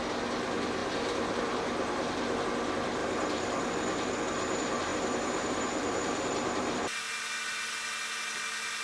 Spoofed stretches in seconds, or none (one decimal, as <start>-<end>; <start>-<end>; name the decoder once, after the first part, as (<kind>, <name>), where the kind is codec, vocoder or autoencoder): 0.8-2.4 (vocoder, BigVGAN v2); 3.0-3.7; 4.9-6.8